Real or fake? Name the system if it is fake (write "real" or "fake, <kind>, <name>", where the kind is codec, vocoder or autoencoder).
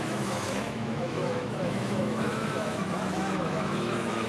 fake, autoencoder, DAC-VAE